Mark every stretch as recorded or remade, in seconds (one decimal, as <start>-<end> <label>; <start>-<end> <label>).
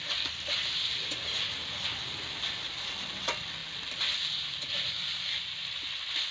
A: 0.0-6.3 recorded